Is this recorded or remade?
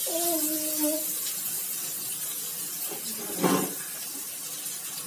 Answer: recorded